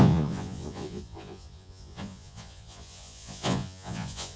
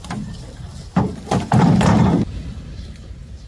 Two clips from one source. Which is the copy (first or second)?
first